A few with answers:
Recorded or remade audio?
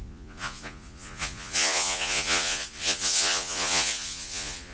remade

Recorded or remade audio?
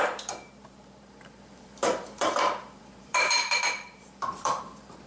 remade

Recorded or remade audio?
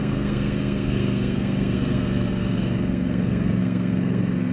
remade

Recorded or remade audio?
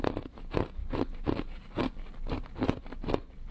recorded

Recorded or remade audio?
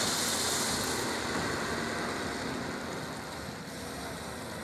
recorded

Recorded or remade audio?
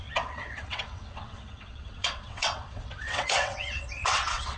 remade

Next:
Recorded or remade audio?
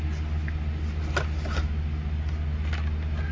recorded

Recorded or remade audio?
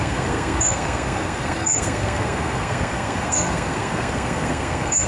remade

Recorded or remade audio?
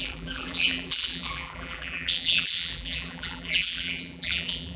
remade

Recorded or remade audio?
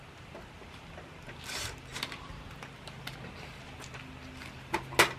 recorded